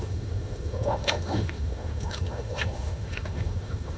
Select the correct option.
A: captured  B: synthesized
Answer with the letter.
B